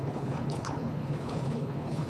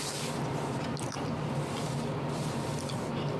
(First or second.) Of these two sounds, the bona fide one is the second